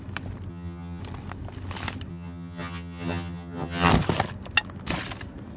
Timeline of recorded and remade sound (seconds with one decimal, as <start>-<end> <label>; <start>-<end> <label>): 0.0-0.5 recorded; 0.5-1.0 remade; 1.0-2.1 recorded; 2.1-3.9 remade; 3.9-5.6 recorded